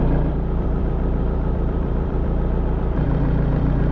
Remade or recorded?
remade